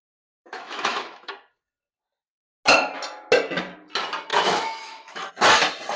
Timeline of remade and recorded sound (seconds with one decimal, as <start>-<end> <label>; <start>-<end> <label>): 0.0-0.4 recorded; 0.4-1.3 remade; 1.3-4.3 recorded; 4.3-5.3 remade; 5.3-6.0 recorded